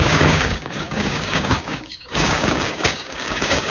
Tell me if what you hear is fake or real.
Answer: fake